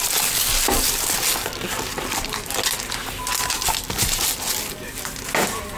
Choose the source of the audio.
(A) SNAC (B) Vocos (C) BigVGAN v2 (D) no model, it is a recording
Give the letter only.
D